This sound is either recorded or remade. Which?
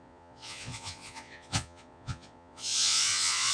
remade